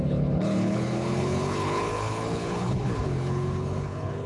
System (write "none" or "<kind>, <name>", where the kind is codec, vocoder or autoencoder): codec, HILCodec